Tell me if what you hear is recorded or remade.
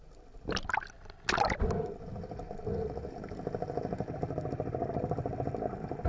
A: recorded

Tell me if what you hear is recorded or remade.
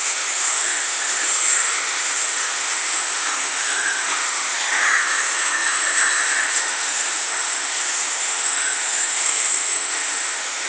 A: remade